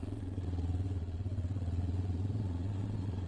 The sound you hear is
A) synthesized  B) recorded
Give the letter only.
A